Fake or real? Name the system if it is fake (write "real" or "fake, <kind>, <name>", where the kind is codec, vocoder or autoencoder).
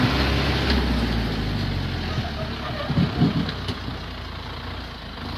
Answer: real